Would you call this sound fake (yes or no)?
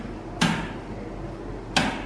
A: no